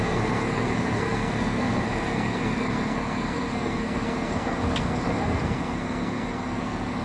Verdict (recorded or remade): remade